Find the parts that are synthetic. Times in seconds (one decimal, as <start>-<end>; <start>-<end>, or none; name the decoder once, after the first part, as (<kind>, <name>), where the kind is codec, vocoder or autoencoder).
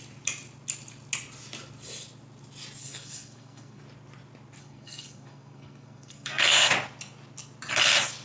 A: 2.8-3.8 (codec, SNAC); 4.6-6.7